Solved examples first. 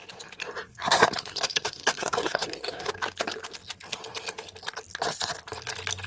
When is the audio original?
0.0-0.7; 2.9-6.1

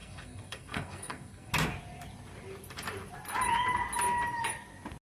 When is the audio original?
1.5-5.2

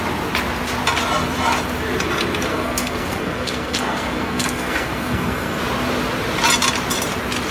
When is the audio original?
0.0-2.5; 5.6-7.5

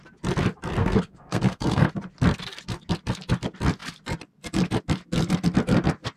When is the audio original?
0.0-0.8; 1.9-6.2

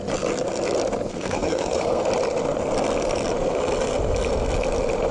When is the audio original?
0.0-1.1; 2.0-5.1

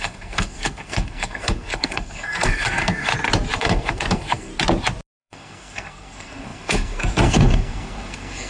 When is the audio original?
3.1-3.6; 4.5-5.2

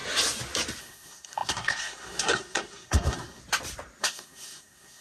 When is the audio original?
0.0-0.8; 3.4-4.0